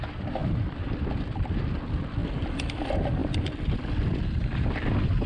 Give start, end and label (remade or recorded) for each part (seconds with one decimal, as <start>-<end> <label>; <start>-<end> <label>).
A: 0.0-0.4 recorded; 0.4-1.5 remade; 1.5-2.2 recorded; 2.2-2.8 remade; 2.8-3.2 recorded; 3.2-4.2 remade; 4.2-5.3 recorded